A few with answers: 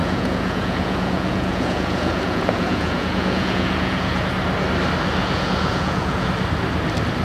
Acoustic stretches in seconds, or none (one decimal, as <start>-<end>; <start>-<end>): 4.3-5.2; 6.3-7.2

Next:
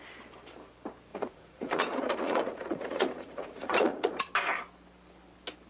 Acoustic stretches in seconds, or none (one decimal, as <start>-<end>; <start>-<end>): 0.0-1.1; 4.3-5.7

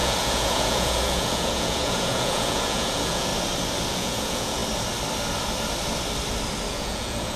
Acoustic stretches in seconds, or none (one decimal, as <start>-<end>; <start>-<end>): 3.3-3.9; 4.6-6.7

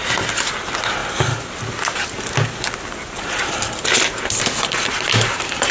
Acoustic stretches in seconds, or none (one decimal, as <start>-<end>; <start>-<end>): 0.0-5.7

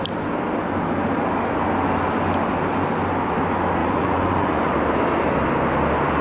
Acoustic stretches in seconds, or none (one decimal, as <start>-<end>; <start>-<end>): 0.0-3.8; 4.7-6.2